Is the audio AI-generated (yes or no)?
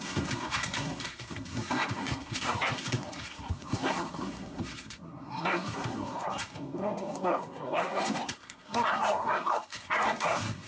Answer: yes